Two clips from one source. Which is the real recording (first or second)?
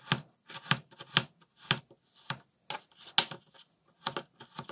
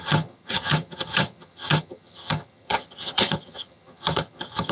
first